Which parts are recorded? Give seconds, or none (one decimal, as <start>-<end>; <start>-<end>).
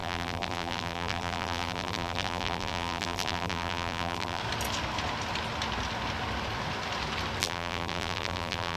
4.4-7.4